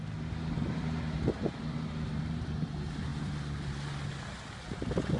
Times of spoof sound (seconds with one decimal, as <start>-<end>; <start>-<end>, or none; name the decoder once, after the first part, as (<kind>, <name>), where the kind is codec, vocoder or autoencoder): none